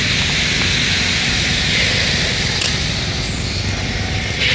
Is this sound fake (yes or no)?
no